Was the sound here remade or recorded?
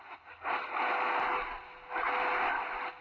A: recorded